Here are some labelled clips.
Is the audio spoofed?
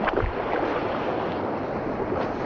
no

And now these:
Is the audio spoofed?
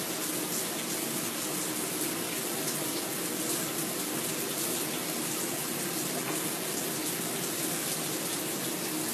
no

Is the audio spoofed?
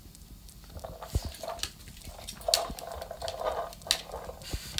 no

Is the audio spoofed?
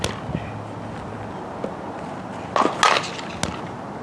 no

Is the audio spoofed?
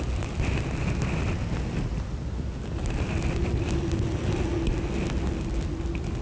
no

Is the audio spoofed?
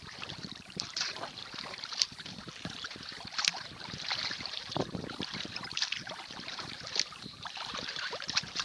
yes